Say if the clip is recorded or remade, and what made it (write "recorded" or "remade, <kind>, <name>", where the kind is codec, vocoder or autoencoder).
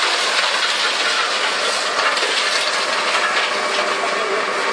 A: recorded